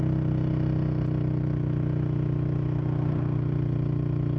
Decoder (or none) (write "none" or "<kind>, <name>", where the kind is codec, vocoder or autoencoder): none